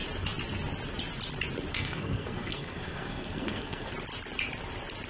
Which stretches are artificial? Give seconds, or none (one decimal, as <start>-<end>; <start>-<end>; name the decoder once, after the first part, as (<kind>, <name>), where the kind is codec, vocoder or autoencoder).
1.7-3.9 (codec, SNAC)